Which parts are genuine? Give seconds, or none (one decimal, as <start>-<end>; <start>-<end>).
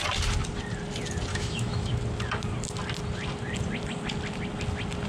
0.0-1.3; 1.9-5.1